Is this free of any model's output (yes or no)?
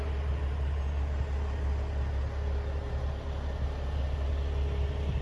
yes